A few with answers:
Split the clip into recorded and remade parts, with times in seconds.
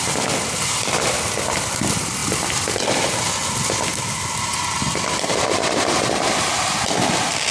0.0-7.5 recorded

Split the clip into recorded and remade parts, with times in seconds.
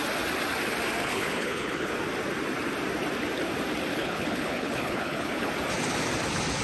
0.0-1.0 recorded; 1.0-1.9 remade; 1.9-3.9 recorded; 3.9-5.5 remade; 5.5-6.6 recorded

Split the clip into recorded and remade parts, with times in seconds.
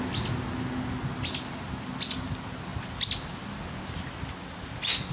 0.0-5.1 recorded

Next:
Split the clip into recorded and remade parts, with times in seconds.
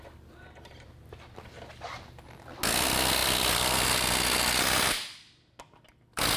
0.0-6.4 recorded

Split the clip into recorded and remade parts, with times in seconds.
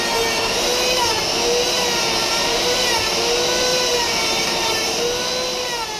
0.0-2.2 recorded; 2.2-3.2 remade; 3.2-3.7 recorded; 3.7-5.0 remade; 5.0-6.0 recorded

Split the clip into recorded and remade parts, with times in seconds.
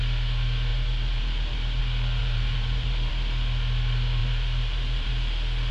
0.0-0.7 recorded; 0.7-1.8 remade; 1.8-2.2 recorded; 2.2-3.1 remade; 3.1-4.2 recorded; 4.2-5.1 remade; 5.1-5.7 recorded